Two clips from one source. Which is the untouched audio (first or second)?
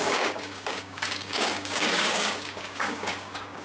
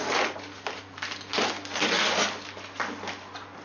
second